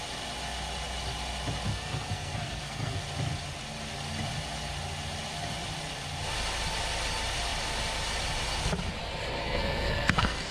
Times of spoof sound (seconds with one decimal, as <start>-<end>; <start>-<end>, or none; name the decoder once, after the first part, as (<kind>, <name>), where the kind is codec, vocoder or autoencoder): 1.7-3.0 (codec, SNAC); 9.4-10.5